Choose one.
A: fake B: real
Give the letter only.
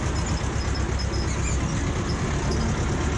B